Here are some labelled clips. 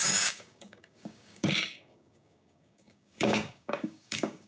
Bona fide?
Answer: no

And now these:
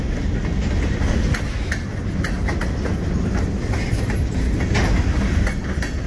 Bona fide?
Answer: yes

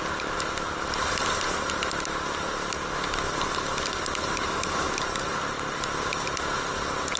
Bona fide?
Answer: yes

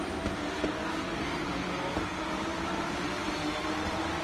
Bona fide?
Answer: yes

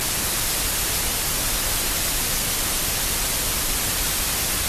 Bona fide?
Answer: yes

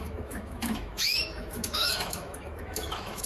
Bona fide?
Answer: no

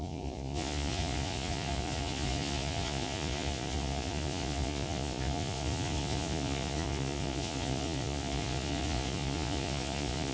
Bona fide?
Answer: no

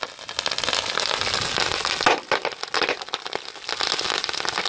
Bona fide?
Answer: yes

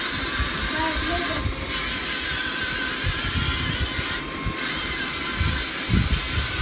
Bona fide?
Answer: yes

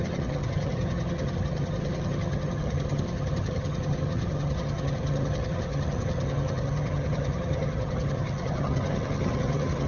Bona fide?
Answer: no